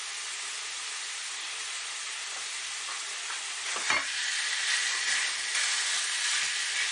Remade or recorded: recorded